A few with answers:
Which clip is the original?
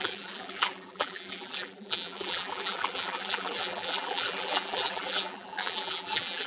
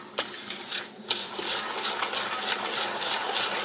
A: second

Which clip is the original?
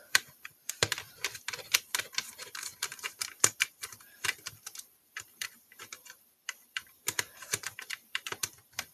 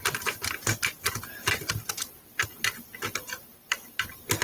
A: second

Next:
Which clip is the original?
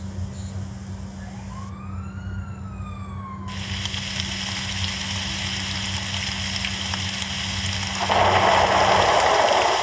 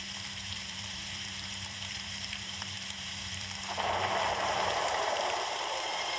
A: first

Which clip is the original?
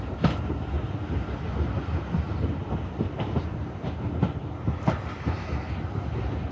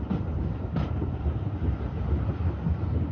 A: first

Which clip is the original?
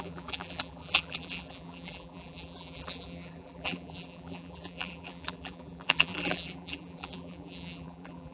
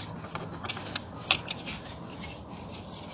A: second